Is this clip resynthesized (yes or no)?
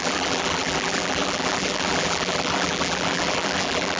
yes